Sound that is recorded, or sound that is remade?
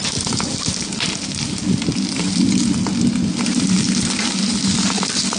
recorded